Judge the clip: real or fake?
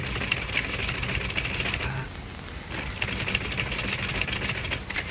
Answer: real